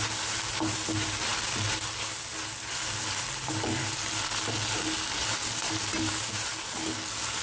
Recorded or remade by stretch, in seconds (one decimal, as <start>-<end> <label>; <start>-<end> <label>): 0.0-7.4 recorded

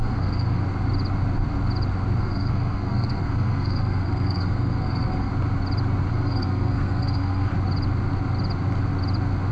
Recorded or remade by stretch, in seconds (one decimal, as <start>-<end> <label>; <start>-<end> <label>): 0.0-0.6 remade; 0.6-2.2 recorded; 2.2-5.3 remade; 5.3-6.1 recorded; 6.1-7.5 remade; 7.5-9.5 recorded

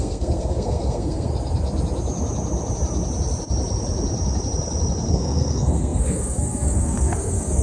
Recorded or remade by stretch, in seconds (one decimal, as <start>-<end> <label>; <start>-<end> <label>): 0.0-1.3 remade; 1.3-5.1 recorded; 5.1-7.6 remade

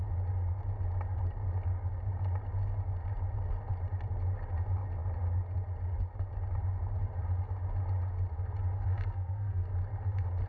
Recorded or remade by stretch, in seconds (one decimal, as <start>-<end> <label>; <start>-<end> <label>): 0.0-8.9 recorded; 8.9-9.7 remade; 9.7-10.5 recorded